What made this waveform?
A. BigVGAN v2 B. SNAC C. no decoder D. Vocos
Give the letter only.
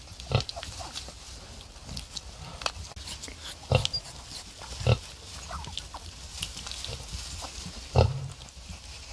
C